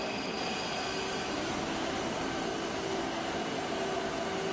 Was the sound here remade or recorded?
recorded